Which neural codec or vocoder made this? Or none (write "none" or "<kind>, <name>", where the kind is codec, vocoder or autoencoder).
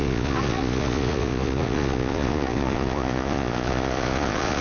vocoder, Vocos